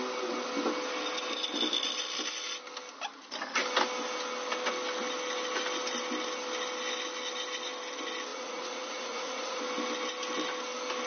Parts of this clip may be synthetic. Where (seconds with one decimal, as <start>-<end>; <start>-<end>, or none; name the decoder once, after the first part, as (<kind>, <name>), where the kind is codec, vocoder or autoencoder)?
8.3-9.6 (vocoder, Vocos)